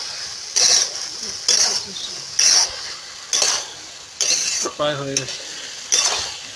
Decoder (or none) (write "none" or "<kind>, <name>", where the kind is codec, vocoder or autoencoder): none